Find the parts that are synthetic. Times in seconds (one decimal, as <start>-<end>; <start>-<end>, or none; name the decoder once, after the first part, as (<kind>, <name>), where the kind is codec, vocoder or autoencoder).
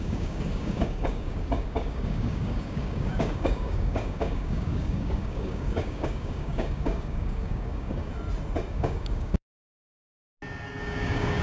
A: 0.0-8.1 (codec, DAC); 8.7-10.2; 10.8-11.4